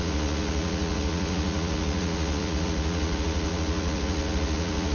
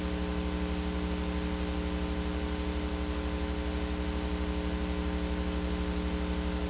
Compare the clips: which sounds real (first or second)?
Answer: second